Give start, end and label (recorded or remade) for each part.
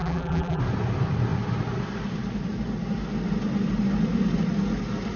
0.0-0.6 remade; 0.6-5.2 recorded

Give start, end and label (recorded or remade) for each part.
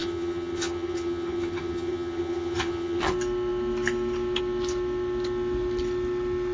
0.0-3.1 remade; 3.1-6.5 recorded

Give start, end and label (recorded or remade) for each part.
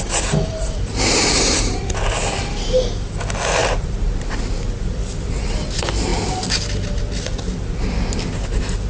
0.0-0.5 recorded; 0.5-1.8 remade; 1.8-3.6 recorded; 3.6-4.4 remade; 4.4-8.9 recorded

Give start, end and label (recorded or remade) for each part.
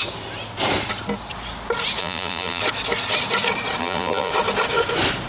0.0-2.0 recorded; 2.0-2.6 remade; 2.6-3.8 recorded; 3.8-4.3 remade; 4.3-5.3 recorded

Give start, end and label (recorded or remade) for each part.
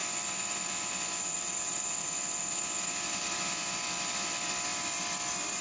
0.0-1.7 recorded; 1.7-5.6 remade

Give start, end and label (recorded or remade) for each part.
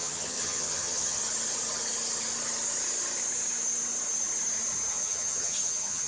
0.0-1.2 remade; 1.2-4.9 recorded; 4.9-6.1 remade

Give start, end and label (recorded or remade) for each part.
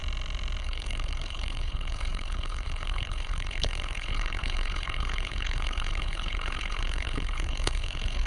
0.0-0.6 recorded; 0.6-8.3 remade